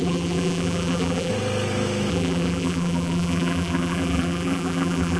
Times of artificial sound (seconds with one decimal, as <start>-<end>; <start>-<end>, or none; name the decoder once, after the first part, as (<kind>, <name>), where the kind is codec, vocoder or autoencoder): 0.0-1.3 (vocoder, BigVGAN v2); 2.1-5.2